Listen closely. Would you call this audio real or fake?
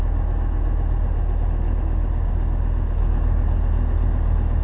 real